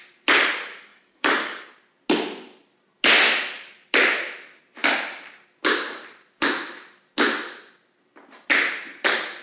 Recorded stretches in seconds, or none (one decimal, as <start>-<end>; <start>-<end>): 0.0-0.9; 1.7-9.4